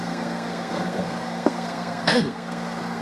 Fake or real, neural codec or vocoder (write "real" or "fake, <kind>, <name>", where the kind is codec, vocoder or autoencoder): fake, codec, SNAC